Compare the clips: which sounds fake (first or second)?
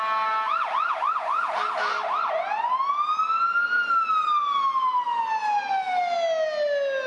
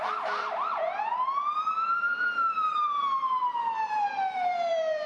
second